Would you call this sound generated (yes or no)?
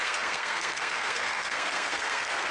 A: yes